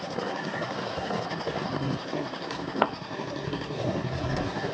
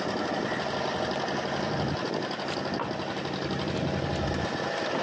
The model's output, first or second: first